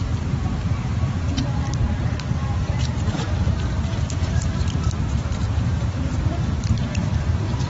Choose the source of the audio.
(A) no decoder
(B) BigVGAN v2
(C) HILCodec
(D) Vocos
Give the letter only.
B